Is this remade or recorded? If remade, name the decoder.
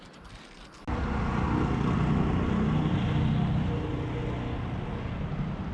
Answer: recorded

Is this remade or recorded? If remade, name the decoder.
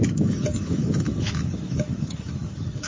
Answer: remade, autoencoder, DAC-VAE